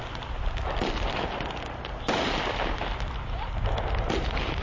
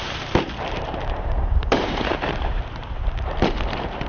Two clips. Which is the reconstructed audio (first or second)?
second